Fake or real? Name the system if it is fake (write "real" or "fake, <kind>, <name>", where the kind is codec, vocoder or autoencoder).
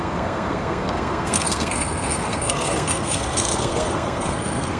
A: fake, codec, SNAC